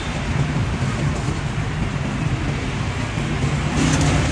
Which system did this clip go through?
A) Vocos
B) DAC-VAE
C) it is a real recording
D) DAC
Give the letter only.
C